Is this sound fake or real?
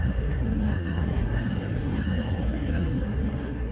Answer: fake